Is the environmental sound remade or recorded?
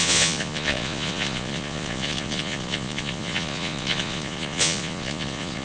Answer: remade